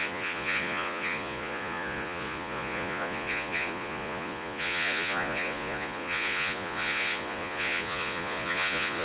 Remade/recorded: remade